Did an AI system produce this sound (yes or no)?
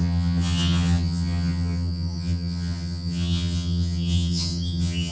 yes